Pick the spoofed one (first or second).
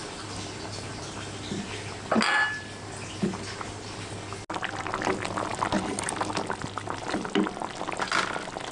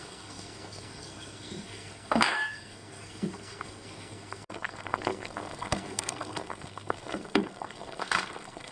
second